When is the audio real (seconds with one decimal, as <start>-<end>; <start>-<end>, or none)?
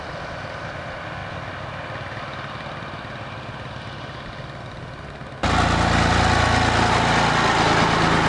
0.0-8.3